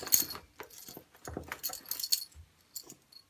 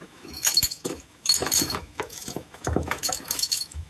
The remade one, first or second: second